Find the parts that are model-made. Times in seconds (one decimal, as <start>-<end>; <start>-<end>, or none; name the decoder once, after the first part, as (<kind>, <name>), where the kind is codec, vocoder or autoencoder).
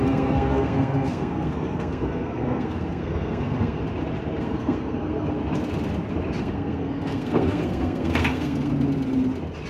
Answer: 0.0-3.8 (codec, SNAC); 4.4-5.4; 6.4-8.7